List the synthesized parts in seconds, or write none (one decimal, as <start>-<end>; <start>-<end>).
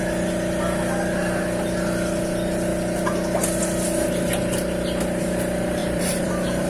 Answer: 5.8-6.3